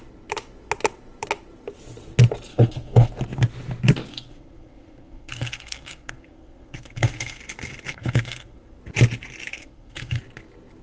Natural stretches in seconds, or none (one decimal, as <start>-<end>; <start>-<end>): 0.0-2.5; 3.1-4.1; 7.4-7.9; 8.8-9.5; 10.2-10.8